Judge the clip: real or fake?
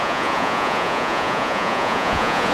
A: fake